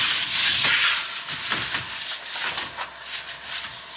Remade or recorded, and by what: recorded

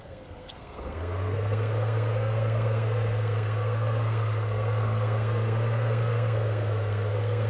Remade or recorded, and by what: remade, codec, SNAC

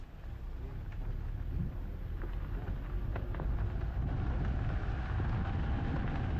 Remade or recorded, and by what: recorded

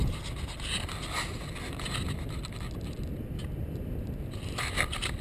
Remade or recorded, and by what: recorded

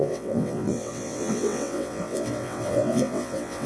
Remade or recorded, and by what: remade, vocoder, WaveNeXt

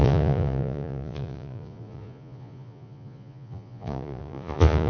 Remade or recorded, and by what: remade, vocoder, Vocos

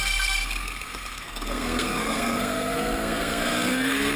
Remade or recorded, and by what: remade, codec, SNAC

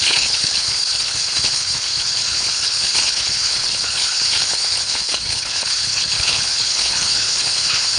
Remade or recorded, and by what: remade, codec, HILCodec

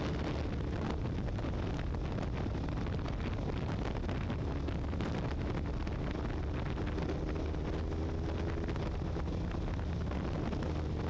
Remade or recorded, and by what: recorded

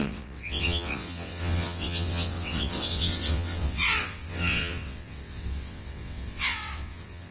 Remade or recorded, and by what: remade, vocoder, WaveNeXt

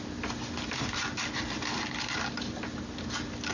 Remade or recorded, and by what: recorded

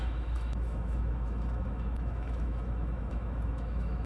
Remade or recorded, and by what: remade, autoencoder, DAC-VAE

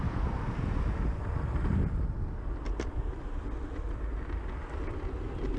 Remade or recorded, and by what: recorded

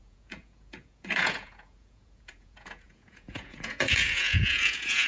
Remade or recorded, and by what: remade, vocoder, Vocos